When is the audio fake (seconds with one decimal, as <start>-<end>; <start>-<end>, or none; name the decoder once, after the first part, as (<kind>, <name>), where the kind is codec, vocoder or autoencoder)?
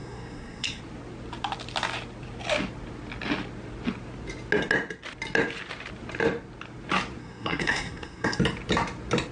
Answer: 0.0-0.8 (codec, SNAC); 7.2-8.4